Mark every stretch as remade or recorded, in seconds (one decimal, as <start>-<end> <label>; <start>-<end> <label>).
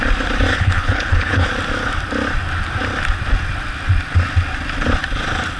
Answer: 0.0-0.5 recorded; 0.5-1.5 remade; 1.5-5.6 recorded